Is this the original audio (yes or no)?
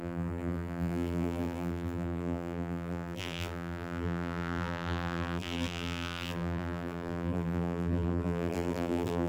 no